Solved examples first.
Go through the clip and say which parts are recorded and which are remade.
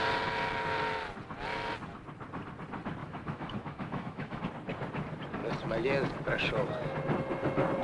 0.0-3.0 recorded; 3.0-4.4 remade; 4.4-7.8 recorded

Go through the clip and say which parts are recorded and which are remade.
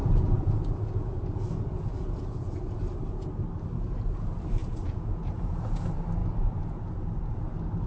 0.0-2.6 remade; 2.6-4.6 recorded; 4.6-5.8 remade; 5.8-6.2 recorded; 6.2-7.4 remade; 7.4-7.9 recorded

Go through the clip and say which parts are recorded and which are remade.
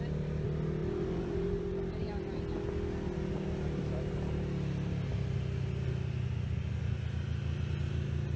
0.0-0.8 recorded; 0.8-2.2 remade; 2.2-8.4 recorded